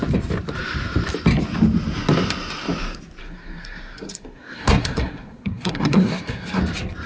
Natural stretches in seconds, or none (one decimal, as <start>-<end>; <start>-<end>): 0.0-3.2; 6.6-7.1